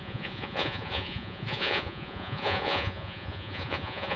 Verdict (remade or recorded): remade